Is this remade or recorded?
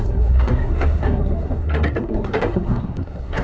remade